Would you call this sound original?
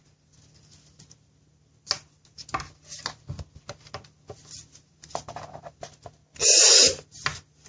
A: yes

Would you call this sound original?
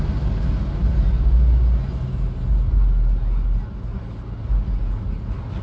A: yes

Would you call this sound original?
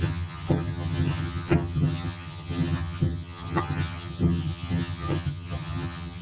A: no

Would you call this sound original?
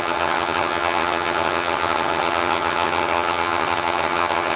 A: no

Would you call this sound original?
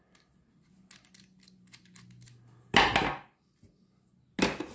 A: yes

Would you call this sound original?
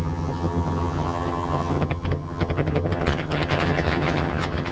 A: no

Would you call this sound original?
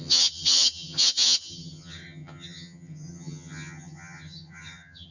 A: no